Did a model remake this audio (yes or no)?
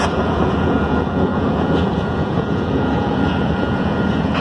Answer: yes